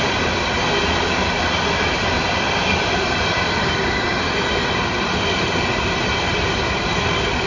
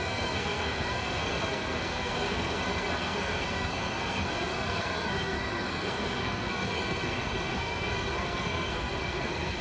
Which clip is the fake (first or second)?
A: second